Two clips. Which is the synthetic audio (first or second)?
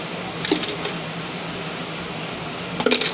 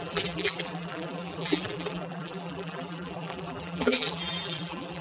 second